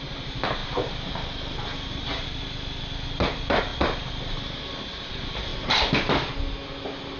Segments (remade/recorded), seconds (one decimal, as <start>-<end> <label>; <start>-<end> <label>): 0.0-5.5 remade; 5.5-7.2 recorded